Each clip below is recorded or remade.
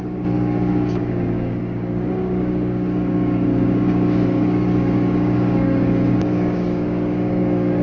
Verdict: remade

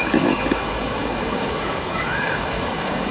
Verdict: remade